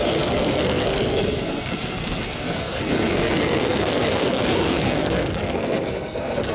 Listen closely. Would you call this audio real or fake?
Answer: fake